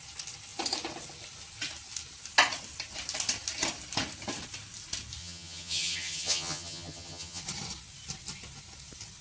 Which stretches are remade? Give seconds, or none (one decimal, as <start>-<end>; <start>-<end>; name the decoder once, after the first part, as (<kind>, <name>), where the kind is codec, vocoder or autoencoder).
5.2-7.4 (vocoder, HiFi-GAN)